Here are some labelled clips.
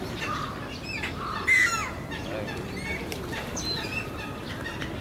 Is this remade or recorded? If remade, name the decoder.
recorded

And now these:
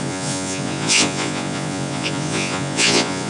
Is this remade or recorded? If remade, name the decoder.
remade, vocoder, Vocos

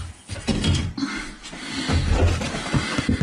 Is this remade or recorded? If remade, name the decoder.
recorded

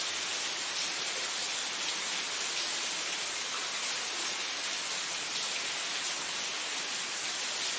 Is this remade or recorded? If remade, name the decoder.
recorded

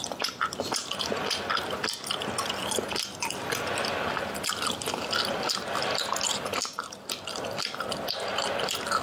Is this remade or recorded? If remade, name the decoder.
recorded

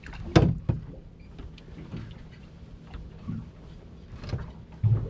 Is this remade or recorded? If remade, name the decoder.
recorded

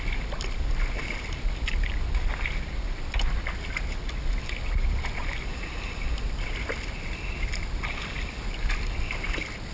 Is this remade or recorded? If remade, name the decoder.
recorded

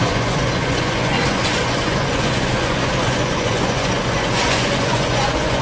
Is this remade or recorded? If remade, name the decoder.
remade, vocoder, Vocos